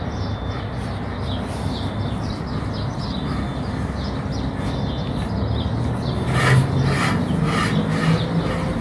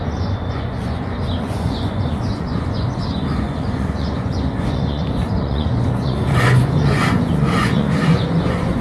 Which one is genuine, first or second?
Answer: first